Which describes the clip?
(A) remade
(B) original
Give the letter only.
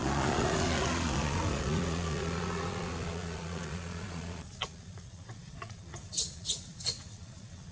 A